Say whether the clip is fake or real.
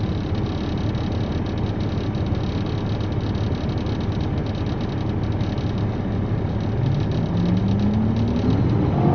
real